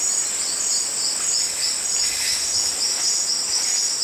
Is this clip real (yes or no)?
yes